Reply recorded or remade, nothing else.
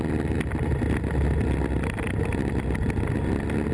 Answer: recorded